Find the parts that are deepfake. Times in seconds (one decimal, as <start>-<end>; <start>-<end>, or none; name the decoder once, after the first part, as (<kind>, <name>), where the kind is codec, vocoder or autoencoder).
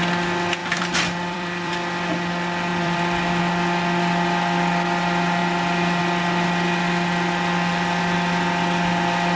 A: 0.6-1.7 (vocoder, BigVGAN v2); 2.7-3.4